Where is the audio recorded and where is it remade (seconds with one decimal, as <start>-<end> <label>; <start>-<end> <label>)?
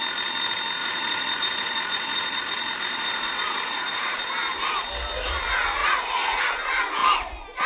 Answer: 0.0-0.8 recorded; 0.8-4.0 remade; 4.0-5.8 recorded; 5.8-6.4 remade; 6.4-7.7 recorded